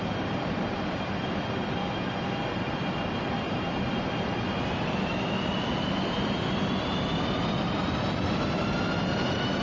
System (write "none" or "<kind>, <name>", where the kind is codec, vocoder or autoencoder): none